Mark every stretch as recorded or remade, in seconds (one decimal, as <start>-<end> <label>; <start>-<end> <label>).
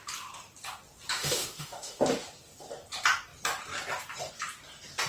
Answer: 0.0-1.1 recorded; 1.1-2.0 remade; 2.0-5.1 recorded